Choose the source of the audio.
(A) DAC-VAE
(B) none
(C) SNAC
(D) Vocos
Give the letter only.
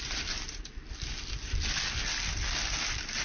B